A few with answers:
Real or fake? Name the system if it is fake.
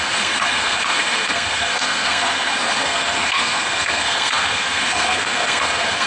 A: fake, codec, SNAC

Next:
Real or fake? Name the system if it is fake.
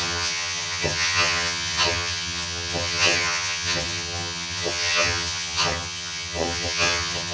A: fake, vocoder, HiFi-GAN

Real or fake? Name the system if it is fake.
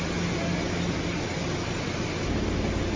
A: real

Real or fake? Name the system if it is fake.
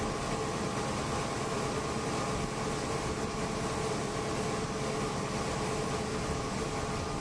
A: real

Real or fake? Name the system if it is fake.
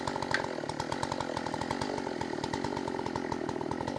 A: real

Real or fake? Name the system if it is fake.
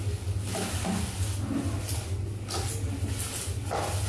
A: real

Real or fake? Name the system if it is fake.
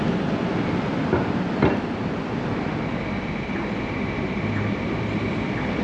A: real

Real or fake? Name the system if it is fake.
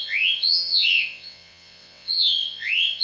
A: fake, vocoder, WaveNeXt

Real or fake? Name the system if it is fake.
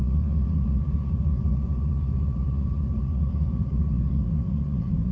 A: fake, vocoder, Vocos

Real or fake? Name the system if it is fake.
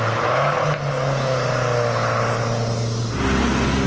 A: real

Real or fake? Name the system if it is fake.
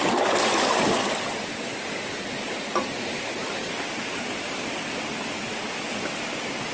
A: real